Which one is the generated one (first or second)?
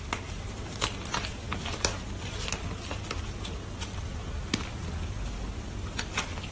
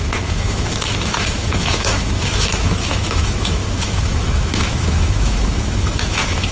second